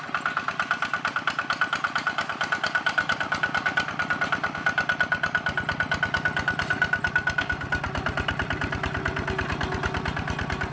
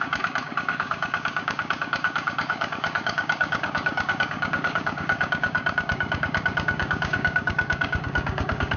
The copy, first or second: second